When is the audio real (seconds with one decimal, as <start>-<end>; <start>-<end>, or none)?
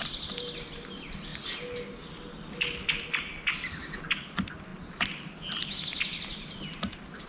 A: 0.0-7.3